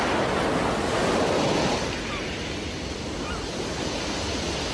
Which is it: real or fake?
real